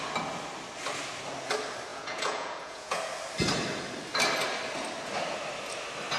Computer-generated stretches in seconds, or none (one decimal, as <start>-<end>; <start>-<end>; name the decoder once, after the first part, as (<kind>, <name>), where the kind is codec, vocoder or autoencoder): 1.9-3.0 (vocoder, Vocos)

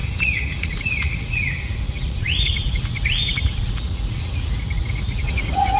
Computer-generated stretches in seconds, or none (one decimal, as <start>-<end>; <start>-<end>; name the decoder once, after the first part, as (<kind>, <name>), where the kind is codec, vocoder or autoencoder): 0.0-5.8 (vocoder, Vocos)

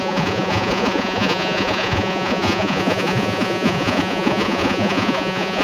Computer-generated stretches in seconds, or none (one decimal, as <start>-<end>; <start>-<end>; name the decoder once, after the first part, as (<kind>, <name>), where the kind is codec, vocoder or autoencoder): 0.0-5.6 (vocoder, Vocos)

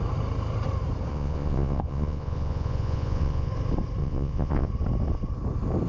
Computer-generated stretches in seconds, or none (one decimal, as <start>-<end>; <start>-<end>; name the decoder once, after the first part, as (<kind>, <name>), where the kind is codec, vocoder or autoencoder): 1.1-3.5 (vocoder, Vocos); 4.0-4.7

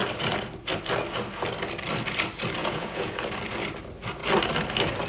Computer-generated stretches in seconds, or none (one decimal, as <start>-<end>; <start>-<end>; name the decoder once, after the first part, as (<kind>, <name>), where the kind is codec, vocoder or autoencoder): 2.6-3.2 (vocoder, Vocos)

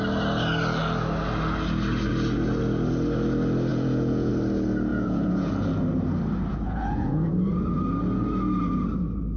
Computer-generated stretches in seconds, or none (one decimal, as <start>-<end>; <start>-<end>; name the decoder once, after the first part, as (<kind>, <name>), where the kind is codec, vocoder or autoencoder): 3.7-4.3 (vocoder, Vocos); 4.9-5.5; 6.5-7.3

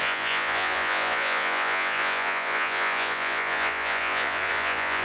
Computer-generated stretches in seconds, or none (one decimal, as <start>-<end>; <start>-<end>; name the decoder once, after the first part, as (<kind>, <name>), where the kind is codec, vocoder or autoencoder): 0.0-5.0 (vocoder, Vocos)

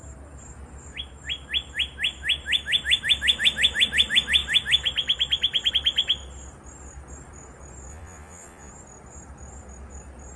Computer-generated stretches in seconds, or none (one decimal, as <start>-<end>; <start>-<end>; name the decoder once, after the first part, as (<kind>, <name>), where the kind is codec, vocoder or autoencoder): 7.9-8.7 (vocoder, Vocos)